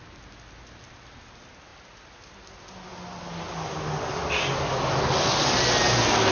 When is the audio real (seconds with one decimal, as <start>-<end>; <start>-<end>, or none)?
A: 0.0-6.3